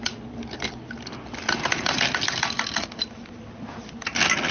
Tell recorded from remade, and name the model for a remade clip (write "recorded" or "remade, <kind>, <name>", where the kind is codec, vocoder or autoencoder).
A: recorded